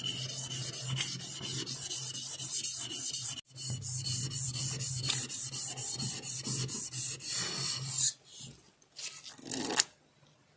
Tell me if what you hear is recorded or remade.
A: recorded